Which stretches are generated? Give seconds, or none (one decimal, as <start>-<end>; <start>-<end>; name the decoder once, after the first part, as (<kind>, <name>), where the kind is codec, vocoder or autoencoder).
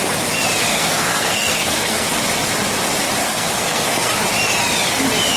0.7-2.1 (codec, SNAC); 3.2-4.1